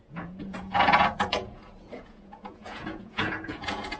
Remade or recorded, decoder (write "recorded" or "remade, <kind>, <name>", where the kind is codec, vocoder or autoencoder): remade, vocoder, Vocos